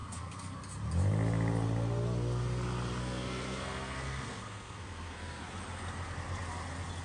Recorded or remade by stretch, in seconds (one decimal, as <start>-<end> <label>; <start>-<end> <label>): 0.0-0.6 remade; 0.6-3.0 recorded; 3.0-5.4 remade; 5.4-7.0 recorded